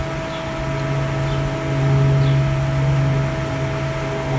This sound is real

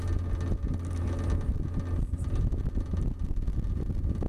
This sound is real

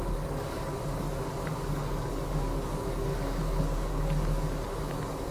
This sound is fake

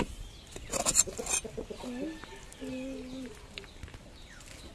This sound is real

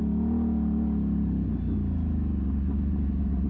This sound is real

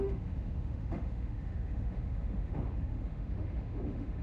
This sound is fake